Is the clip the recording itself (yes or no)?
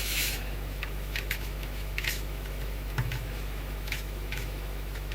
no